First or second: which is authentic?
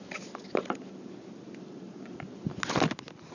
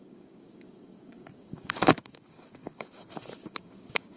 first